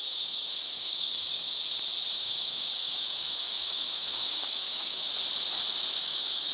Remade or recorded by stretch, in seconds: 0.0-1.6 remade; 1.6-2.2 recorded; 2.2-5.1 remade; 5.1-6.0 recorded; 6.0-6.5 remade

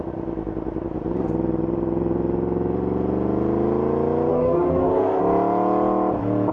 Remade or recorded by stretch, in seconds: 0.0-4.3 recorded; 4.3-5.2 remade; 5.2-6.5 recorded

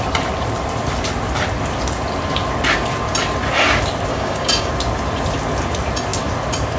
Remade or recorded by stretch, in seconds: 0.0-4.1 recorded; 4.1-4.7 remade; 4.7-6.8 recorded